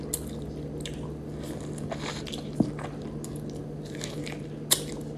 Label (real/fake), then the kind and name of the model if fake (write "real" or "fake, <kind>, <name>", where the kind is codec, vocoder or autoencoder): real